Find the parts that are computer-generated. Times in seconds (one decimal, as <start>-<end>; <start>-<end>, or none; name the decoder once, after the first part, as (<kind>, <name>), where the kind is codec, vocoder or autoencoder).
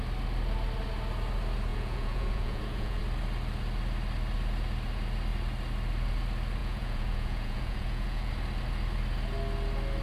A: 1.7-3.0 (vocoder, Vocos); 6.6-8.3